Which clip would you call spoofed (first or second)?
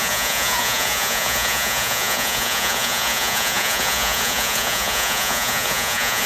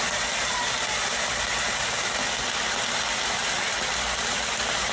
first